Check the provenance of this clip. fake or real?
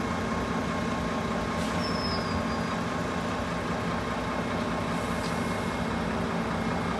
real